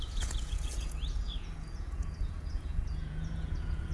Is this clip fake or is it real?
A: fake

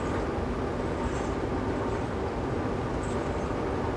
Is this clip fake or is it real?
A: real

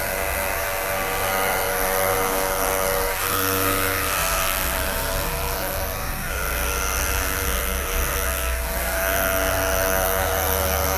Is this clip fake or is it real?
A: fake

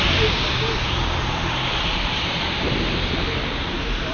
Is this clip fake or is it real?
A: fake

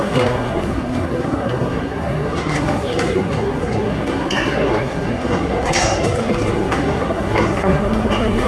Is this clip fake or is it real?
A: fake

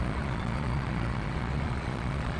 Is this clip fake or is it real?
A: fake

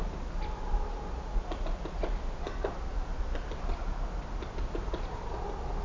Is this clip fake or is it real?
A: real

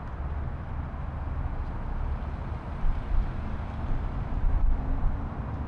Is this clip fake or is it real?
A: real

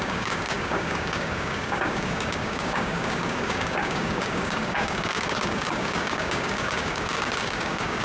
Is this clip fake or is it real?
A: fake